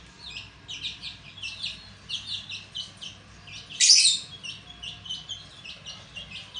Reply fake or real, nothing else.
real